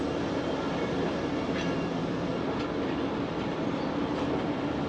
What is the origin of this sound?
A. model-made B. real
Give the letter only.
B